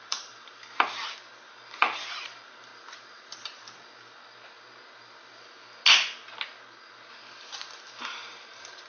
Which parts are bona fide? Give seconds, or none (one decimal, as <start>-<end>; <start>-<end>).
0.7-1.3; 2.7-7.1